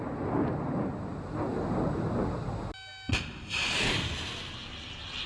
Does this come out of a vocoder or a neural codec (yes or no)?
no